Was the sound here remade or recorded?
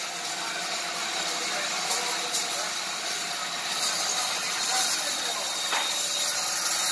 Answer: recorded